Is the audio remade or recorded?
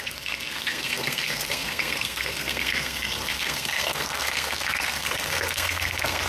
remade